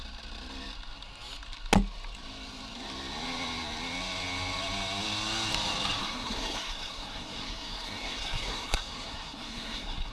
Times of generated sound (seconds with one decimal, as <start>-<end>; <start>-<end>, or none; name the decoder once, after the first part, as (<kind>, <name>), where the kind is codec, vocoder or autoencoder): 6.0-10.1 (codec, SNAC)

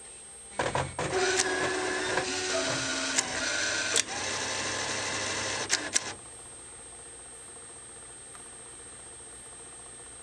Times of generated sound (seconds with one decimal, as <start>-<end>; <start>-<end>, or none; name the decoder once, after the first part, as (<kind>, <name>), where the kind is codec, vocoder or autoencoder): none

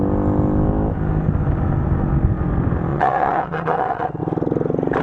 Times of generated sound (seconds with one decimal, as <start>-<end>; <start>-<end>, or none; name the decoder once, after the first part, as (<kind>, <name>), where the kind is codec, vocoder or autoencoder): 2.9-4.2 (vocoder, WaveNeXt)

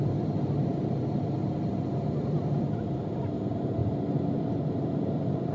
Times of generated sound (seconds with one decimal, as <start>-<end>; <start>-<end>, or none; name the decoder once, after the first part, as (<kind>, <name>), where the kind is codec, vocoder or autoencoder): none

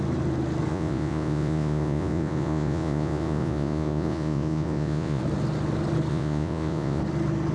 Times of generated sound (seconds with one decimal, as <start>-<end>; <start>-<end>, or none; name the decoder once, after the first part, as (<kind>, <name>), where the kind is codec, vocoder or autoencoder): 0.7-5.2 (vocoder, Vocos); 6.1-7.0

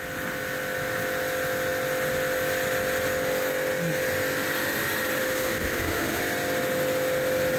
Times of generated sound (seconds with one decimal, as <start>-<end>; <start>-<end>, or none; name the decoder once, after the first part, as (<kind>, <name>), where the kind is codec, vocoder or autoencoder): 5.2-6.2 (autoencoder, DAC-VAE)

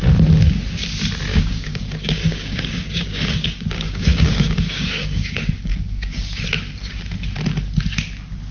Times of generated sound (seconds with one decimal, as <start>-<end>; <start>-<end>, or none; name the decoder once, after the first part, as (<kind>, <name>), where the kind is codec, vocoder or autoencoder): 1.3-6.4 (codec, DAC)

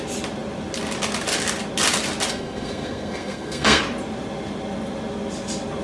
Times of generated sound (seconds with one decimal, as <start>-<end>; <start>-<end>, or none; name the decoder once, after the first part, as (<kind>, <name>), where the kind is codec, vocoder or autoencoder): 2.3-3.8 (codec, SNAC)